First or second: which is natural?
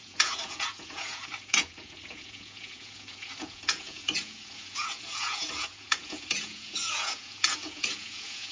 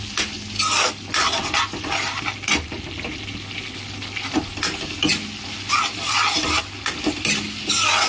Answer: second